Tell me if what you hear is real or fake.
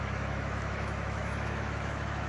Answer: fake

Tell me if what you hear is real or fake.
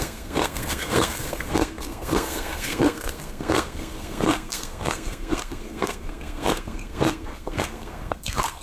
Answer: fake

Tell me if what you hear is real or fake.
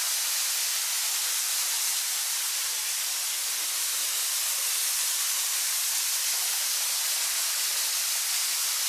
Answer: real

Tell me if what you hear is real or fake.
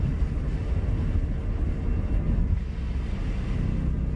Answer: real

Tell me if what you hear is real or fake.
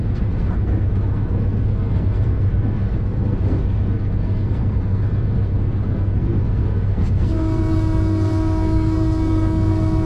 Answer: fake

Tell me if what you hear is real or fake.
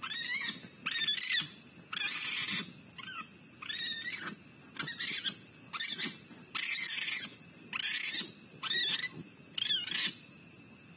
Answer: real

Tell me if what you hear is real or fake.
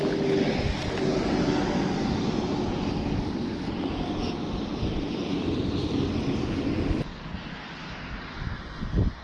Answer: real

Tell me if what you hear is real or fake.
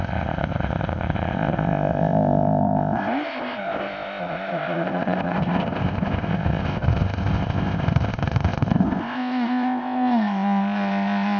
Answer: fake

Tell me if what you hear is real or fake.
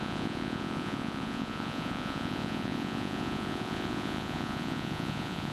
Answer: fake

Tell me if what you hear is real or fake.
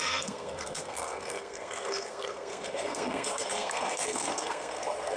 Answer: fake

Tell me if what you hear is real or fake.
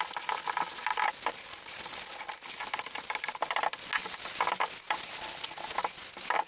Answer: real